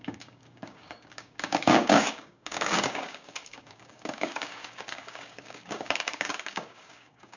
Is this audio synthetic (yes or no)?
yes